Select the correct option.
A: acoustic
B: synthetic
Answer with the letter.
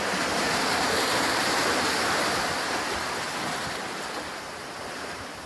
B